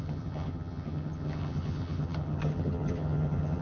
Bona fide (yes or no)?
no